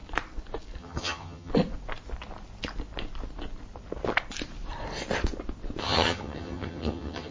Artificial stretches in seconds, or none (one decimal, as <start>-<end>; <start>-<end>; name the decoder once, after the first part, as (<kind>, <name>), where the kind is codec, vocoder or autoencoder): 0.8-1.5 (vocoder, HiFi-GAN); 5.8-7.3